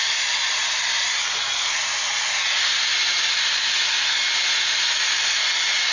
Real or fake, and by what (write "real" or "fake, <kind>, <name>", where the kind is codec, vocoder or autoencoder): real